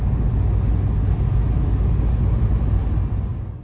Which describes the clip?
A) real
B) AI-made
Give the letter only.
A